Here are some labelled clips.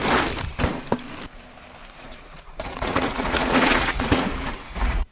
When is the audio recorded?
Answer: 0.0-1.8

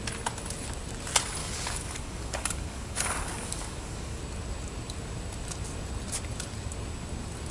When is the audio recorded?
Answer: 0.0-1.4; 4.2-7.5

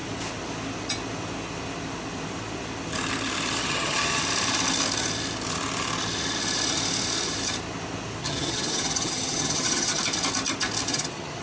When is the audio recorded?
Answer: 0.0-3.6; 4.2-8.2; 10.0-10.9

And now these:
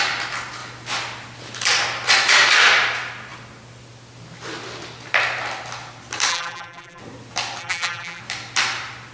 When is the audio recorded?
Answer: 0.0-6.3; 7.0-7.6; 8.2-9.1

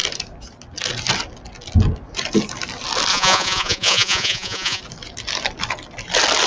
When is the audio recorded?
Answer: 0.0-3.1; 4.8-6.5